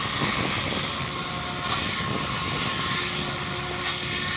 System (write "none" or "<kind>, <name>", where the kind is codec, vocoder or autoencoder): none